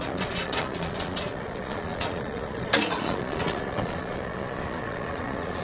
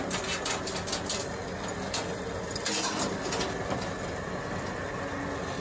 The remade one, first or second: first